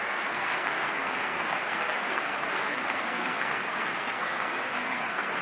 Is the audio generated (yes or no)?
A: yes